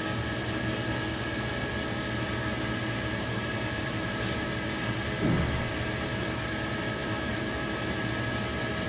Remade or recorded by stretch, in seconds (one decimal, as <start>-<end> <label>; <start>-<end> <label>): 0.0-8.9 recorded